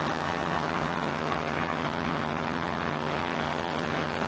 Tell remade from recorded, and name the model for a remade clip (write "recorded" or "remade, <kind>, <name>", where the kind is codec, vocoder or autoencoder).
remade, vocoder, HiFi-GAN